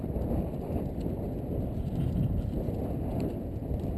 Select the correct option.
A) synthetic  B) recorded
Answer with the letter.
B